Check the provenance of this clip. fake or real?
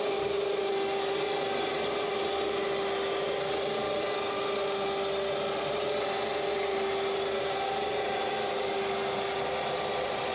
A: real